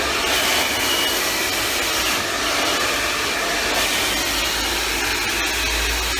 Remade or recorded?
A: recorded